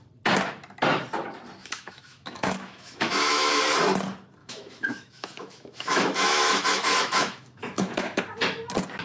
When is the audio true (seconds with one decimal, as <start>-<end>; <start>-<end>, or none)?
0.0-1.6; 3.6-4.4; 8.2-9.0